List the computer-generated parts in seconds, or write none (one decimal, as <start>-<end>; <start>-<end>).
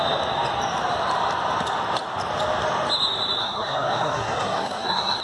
3.4-5.2